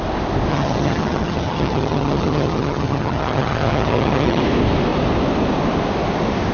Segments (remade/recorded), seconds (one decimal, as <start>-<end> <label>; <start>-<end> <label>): 0.0-0.5 recorded; 0.5-4.4 remade; 4.4-6.5 recorded